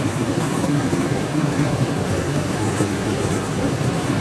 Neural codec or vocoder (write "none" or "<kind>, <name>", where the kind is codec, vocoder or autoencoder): codec, SNAC